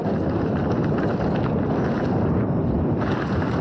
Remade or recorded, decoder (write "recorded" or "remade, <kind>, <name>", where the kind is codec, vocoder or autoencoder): recorded